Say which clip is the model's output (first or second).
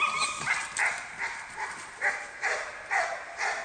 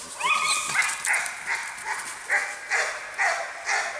first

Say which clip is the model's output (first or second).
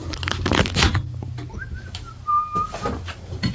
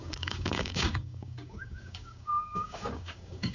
second